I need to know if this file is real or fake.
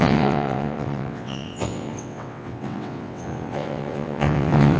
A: fake